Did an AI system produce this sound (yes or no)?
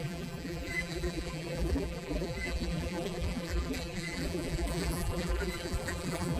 yes